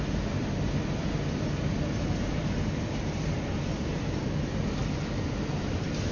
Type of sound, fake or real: real